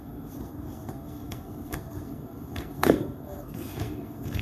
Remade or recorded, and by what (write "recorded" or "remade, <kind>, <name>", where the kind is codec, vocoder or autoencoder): remade, codec, SNAC